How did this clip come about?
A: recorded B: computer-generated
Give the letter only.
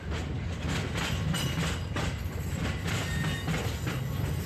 A